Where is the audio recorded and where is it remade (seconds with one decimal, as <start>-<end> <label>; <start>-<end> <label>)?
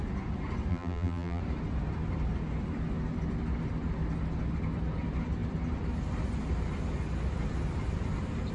0.0-0.7 recorded; 0.7-1.4 remade; 1.4-8.5 recorded